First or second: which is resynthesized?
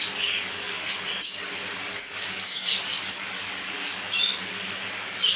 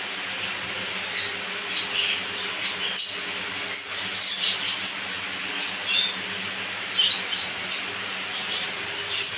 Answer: first